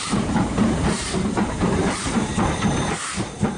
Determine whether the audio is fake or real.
fake